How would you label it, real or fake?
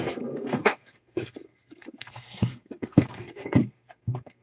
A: fake